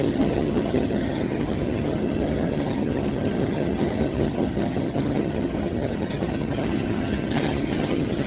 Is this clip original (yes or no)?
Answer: no